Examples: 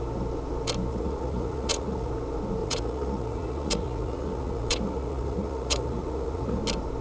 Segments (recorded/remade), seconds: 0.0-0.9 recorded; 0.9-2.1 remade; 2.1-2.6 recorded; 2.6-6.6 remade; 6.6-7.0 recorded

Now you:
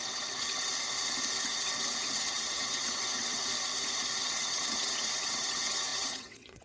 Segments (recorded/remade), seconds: 0.0-0.7 remade; 0.7-2.1 recorded; 2.1-3.5 remade; 3.5-4.2 recorded; 4.2-6.6 remade

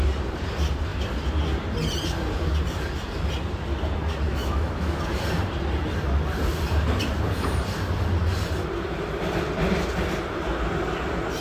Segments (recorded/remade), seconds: 0.0-4.3 recorded; 4.3-5.0 remade; 5.0-11.4 recorded

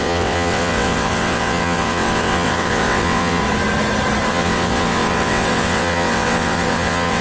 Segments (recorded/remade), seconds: 0.0-3.4 remade; 3.4-4.3 recorded; 4.3-7.2 remade

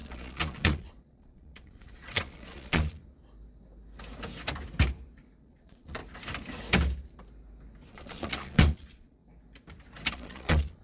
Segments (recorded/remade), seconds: 0.0-3.0 remade; 3.0-5.4 recorded; 5.4-6.0 remade; 6.0-7.9 recorded; 7.9-9.2 remade; 9.2-10.1 recorded; 10.1-10.8 remade

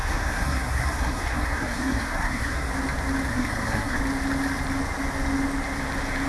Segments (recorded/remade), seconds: 0.0-2.7 remade; 2.7-3.3 recorded; 3.3-4.0 remade; 4.0-6.3 recorded

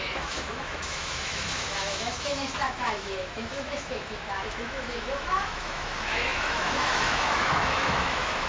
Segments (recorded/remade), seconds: 0.0-8.5 remade